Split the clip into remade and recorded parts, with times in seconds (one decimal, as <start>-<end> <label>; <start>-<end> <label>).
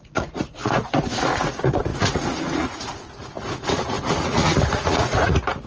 0.0-5.7 remade